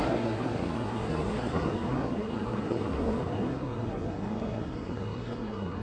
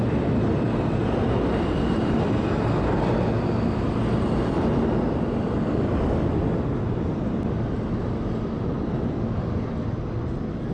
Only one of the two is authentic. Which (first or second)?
second